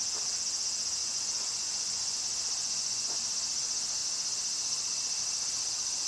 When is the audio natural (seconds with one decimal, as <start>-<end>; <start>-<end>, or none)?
0.0-1.0; 2.2-2.6; 3.2-6.1